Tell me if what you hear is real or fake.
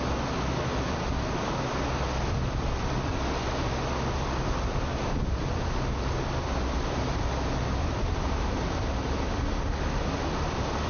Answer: real